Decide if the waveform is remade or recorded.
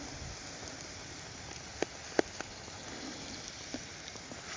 recorded